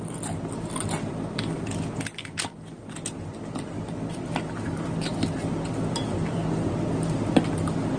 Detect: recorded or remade recorded